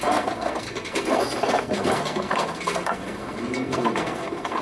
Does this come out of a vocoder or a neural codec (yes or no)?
yes